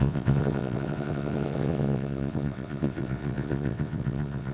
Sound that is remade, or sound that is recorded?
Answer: remade